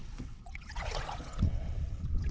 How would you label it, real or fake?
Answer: fake